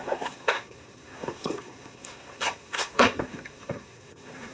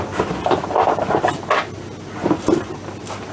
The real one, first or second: second